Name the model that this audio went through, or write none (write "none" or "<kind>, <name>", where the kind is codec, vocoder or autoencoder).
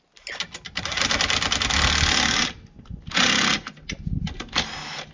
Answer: none